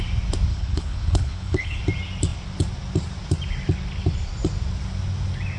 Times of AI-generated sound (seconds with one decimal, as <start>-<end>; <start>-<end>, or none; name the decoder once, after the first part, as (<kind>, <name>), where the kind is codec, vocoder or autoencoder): 0.5-1.8 (codec, HILCodec)